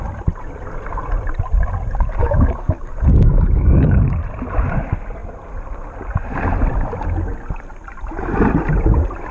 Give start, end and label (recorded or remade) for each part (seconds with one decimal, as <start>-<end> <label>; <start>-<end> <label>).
0.0-2.2 recorded; 2.2-4.2 remade; 4.2-9.3 recorded